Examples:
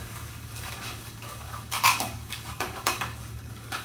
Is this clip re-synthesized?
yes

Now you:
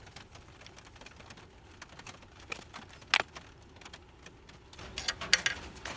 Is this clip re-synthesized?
no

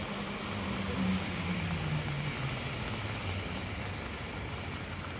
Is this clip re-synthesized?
no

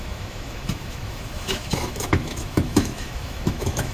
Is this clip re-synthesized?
yes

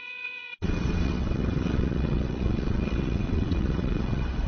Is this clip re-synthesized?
yes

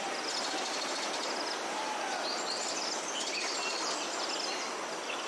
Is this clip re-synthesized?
no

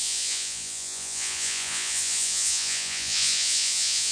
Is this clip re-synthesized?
yes